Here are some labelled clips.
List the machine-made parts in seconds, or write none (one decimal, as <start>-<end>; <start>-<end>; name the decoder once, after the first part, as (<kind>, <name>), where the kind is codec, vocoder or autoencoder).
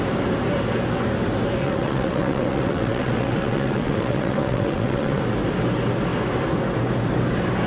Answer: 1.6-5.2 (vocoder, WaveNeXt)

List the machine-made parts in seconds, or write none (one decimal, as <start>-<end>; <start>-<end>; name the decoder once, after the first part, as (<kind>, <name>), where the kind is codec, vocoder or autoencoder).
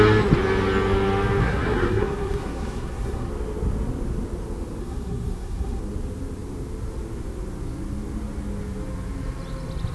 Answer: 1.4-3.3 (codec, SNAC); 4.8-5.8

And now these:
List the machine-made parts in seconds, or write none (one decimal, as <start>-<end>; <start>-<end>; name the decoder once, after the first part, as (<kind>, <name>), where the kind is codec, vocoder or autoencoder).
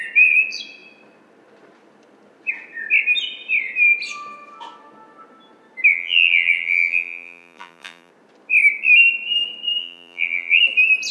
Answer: 5.9-8.1 (vocoder, BigVGAN v2); 9.8-10.6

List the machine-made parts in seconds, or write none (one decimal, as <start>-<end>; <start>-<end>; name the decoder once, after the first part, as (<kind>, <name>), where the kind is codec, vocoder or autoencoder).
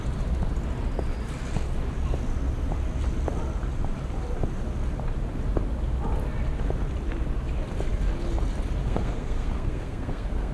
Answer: 8.8-10.5 (codec, SNAC)